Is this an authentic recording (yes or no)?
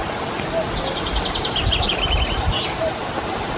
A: yes